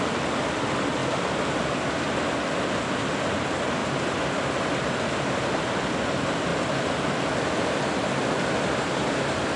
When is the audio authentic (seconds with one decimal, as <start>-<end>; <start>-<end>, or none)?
0.0-9.6